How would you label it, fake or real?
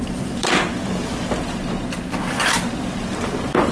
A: real